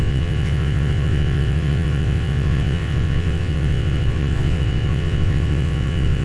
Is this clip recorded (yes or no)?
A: no